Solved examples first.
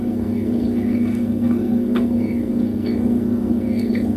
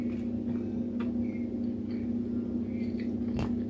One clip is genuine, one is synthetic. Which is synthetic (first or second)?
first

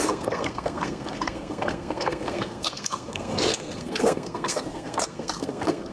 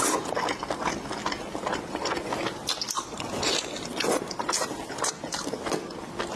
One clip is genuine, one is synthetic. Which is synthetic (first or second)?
first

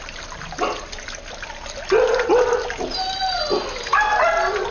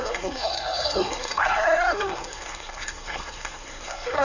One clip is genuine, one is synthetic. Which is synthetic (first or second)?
second